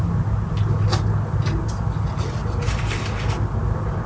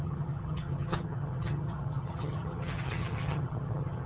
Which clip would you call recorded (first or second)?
first